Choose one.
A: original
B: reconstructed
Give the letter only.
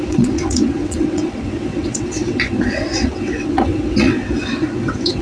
B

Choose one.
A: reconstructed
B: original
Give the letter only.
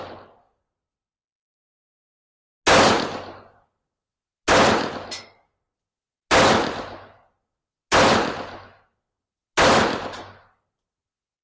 B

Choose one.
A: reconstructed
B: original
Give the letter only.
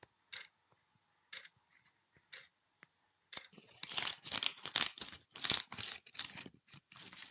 B